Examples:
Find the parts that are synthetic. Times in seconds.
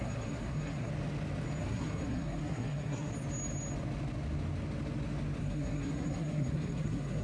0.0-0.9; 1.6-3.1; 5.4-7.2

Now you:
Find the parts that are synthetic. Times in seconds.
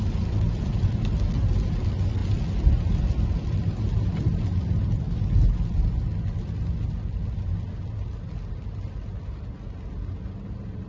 none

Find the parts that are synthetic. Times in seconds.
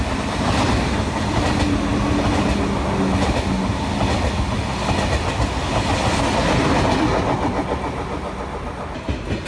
none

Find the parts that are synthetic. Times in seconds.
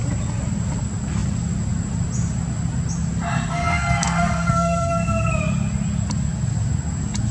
3.5-5.4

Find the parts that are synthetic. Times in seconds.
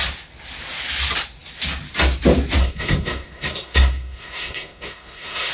2.6-5.5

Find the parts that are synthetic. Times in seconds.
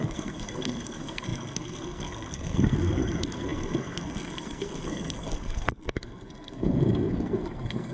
0.0-7.9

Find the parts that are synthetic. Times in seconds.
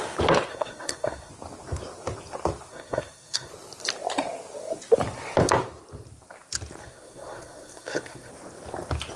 0.5-1.3; 2.7-3.5; 6.8-8.3